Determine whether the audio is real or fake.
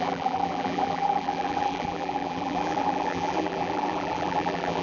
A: fake